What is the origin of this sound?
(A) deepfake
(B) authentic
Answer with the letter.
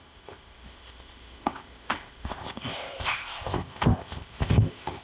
A